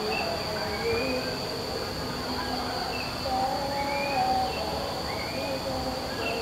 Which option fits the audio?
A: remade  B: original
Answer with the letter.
B